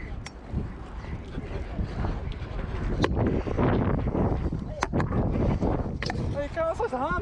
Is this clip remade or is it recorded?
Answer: recorded